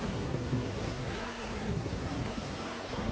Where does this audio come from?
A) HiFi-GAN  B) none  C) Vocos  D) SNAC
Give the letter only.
D